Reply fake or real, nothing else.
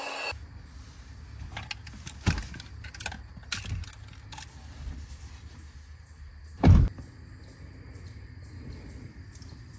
real